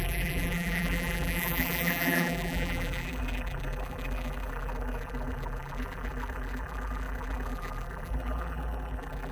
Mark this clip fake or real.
fake